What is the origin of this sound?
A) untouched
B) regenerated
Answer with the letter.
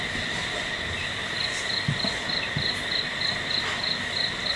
A